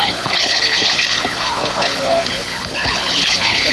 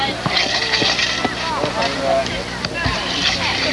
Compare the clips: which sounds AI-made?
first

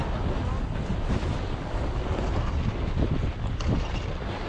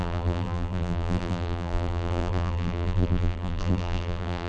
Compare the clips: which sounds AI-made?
second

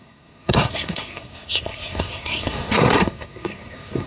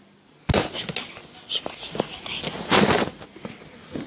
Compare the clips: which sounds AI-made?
first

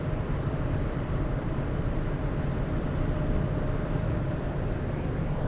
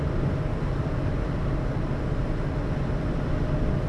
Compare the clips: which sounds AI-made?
first